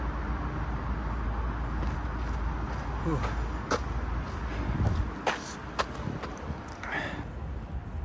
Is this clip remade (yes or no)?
no